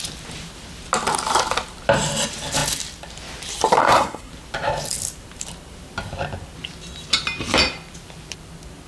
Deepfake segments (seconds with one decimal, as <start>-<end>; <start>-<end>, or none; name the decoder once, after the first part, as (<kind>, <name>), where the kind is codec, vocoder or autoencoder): 3.8-4.3 (codec, SNAC)

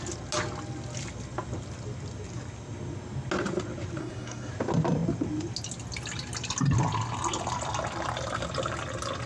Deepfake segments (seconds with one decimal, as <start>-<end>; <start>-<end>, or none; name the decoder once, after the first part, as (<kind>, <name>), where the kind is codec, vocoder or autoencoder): 4.0-4.5 (codec, SNAC)

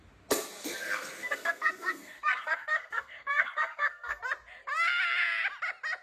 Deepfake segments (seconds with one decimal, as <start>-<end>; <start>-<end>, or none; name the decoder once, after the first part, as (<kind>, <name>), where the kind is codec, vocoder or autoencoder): 0.6-4.2 (codec, SNAC)

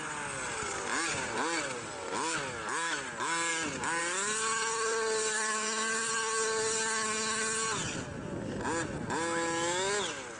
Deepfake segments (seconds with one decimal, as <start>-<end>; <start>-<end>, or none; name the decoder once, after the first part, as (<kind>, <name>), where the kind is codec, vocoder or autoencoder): 4.9-6.1 (vocoder, BigVGAN v2)